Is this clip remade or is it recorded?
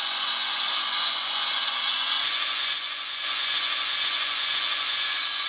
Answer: remade